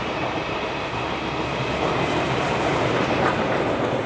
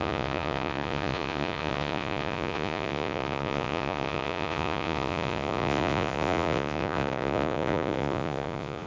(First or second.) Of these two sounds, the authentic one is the first